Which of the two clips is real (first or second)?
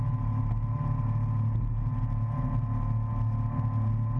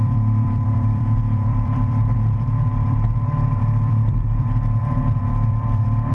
first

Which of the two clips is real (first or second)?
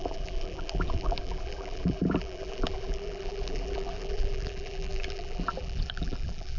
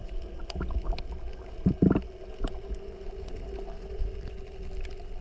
second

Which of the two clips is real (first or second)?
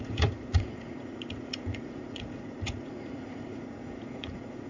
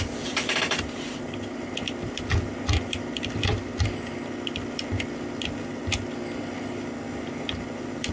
second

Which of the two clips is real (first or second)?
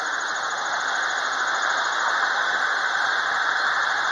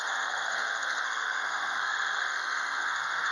first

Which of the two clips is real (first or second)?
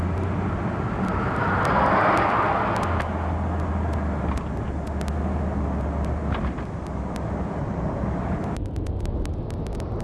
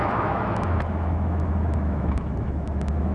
first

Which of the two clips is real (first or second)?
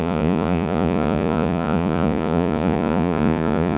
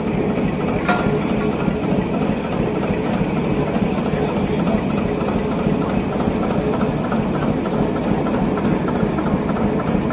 second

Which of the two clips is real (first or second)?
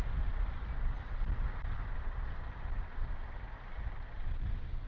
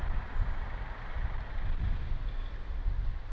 first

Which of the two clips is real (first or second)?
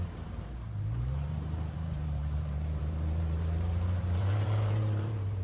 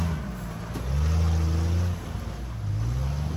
second